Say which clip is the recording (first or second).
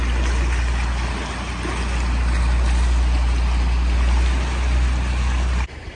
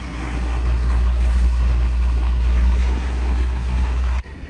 first